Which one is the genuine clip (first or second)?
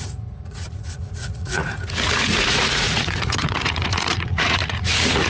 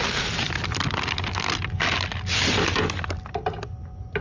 second